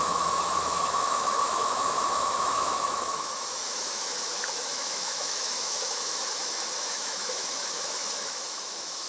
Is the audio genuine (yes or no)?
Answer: no